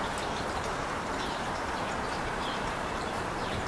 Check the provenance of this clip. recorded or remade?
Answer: remade